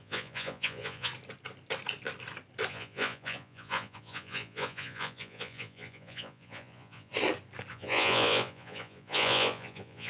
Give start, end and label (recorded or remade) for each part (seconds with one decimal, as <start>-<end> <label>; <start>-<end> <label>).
0.0-1.1 remade; 1.1-2.7 recorded; 2.7-7.1 remade; 7.1-7.7 recorded; 7.7-10.1 remade